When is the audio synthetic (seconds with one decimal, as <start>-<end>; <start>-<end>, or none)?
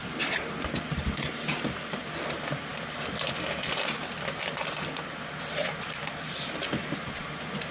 none